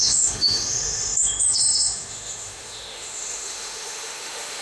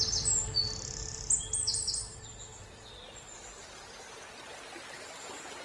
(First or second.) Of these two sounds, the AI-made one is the first